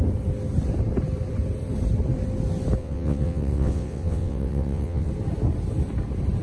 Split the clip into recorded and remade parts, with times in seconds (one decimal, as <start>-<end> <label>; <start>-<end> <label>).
0.0-2.8 recorded; 2.8-5.1 remade; 5.1-6.4 recorded